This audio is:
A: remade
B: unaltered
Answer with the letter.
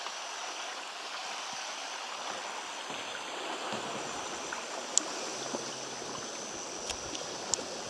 B